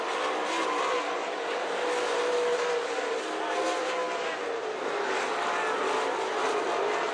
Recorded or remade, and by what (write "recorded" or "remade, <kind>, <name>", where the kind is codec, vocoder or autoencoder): recorded